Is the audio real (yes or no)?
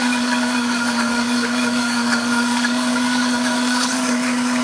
no